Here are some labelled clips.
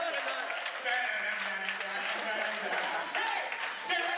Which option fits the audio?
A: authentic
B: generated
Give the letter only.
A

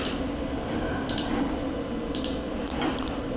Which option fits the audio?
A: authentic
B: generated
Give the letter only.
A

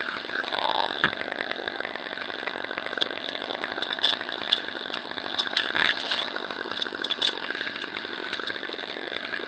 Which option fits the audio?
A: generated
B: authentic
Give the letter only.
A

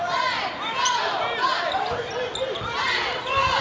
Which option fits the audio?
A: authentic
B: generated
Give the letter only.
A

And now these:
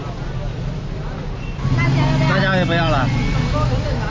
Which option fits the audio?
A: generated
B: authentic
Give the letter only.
B